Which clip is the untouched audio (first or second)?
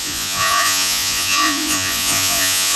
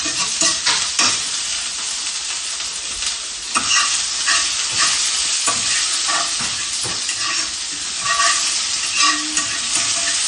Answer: second